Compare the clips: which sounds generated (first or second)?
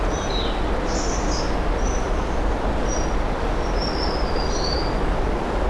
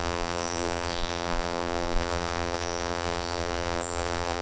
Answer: second